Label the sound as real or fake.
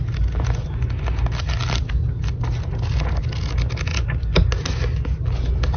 real